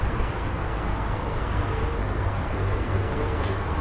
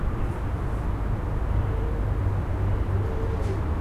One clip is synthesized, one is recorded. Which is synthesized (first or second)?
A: first